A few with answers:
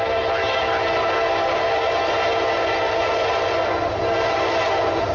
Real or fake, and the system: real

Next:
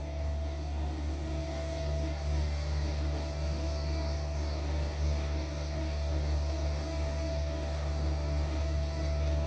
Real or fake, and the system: fake, codec, DAC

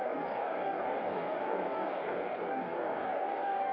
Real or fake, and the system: fake, codec, DAC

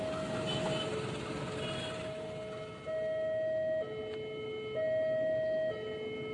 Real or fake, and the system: real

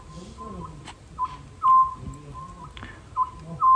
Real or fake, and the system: real